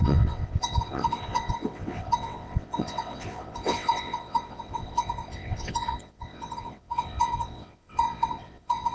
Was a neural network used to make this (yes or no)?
yes